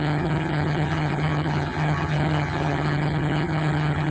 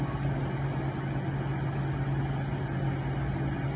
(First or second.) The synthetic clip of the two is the first